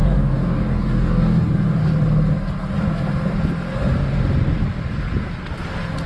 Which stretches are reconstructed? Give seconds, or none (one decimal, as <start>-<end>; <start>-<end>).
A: 0.0-1.5